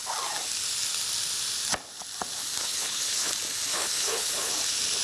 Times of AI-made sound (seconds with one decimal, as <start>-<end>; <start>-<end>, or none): 2.6-3.3; 3.7-4.5